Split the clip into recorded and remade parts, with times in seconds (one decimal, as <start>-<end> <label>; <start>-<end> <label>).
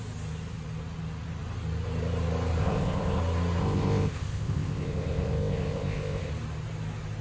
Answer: 0.0-2.6 recorded; 2.6-3.2 remade; 3.2-3.6 recorded; 3.6-6.3 remade; 6.3-7.2 recorded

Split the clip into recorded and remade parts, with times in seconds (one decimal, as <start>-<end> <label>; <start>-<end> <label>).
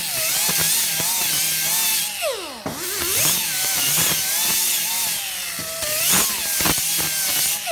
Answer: 0.0-3.1 recorded; 3.1-6.1 remade; 6.1-7.7 recorded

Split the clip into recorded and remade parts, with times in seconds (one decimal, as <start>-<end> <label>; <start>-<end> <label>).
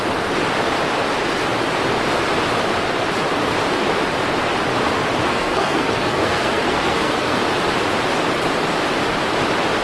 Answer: 0.0-5.3 recorded; 5.3-7.4 remade; 7.4-9.8 recorded